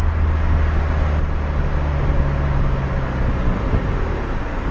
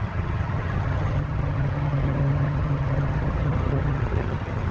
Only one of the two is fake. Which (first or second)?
second